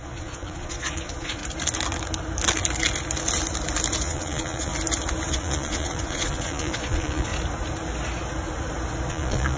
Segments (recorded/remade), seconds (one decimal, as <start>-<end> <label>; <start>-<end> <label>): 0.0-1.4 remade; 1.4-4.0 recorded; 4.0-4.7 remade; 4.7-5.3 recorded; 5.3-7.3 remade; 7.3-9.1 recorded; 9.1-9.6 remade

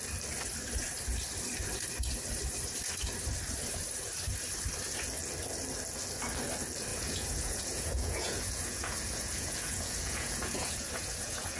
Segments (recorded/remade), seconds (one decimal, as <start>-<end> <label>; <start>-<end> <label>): 0.0-6.9 recorded; 6.9-11.6 remade

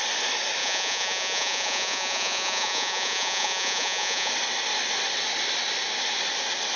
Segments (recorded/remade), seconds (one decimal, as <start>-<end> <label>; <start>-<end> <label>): 0.0-0.6 recorded; 0.6-4.3 remade; 4.3-6.8 recorded